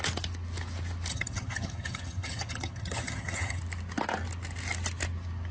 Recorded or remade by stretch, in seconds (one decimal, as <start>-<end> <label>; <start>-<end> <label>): 0.0-1.1 recorded; 1.1-3.6 remade; 3.6-5.5 recorded